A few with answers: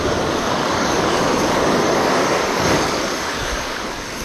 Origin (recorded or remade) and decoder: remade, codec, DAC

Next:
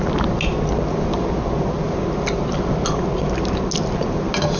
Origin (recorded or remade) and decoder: recorded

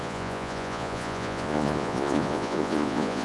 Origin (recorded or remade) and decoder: remade, vocoder, Vocos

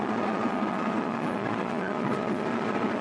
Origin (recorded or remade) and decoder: remade, vocoder, Vocos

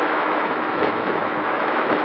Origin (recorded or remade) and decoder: remade, autoencoder, DAC-VAE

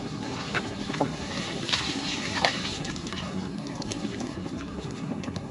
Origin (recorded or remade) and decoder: remade, codec, SNAC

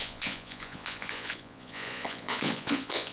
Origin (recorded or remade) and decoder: remade, vocoder, Vocos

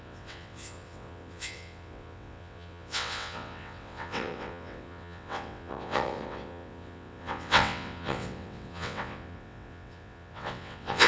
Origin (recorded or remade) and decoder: remade, vocoder, WaveNeXt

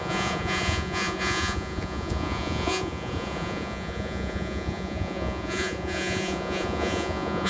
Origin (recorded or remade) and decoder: remade, vocoder, Vocos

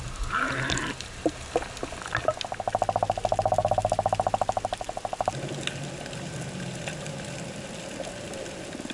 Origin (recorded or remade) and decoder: recorded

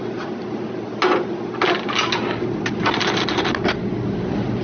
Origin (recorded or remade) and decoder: recorded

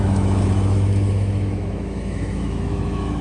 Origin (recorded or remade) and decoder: remade, autoencoder, DAC-VAE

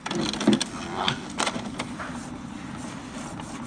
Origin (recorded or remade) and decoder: recorded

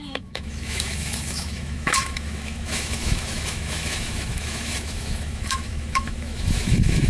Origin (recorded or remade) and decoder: remade, autoencoder, DAC-VAE